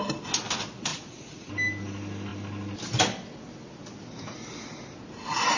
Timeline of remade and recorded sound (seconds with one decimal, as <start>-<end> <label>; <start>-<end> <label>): 0.0-0.9 recorded; 0.9-1.5 remade; 1.5-5.6 recorded